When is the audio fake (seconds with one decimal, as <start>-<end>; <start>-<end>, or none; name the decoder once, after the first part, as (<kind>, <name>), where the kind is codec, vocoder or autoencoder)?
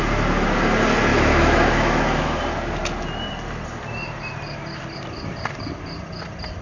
1.1-2.4 (autoencoder, DAC-VAE)